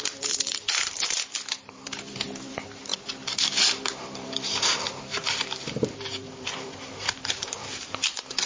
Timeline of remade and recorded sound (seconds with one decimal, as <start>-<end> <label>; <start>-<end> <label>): 0.0-8.5 remade